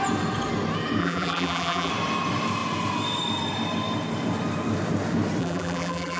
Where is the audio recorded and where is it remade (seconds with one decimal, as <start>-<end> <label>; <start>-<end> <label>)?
0.0-1.0 recorded; 1.0-1.9 remade; 1.9-5.4 recorded; 5.4-6.2 remade